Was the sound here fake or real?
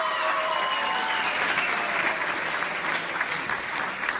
real